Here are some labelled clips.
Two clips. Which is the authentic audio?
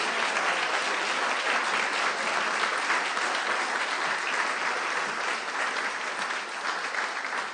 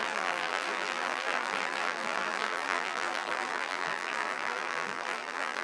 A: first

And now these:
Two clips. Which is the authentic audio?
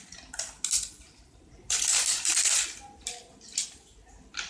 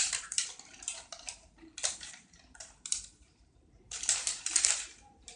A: first